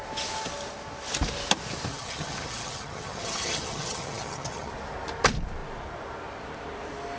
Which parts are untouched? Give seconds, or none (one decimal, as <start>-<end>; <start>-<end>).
0.0-1.9; 4.7-7.2